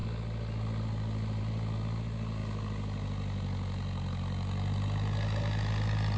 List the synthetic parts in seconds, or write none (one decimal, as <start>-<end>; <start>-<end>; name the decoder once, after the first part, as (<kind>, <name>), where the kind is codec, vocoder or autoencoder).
none